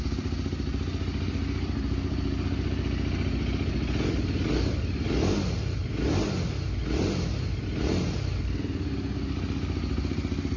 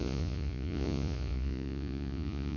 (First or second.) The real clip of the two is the first